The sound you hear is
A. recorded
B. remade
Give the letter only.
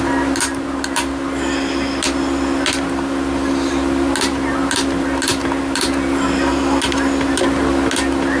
A